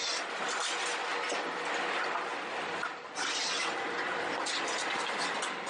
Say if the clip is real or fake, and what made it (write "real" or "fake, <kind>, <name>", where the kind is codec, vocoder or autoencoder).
real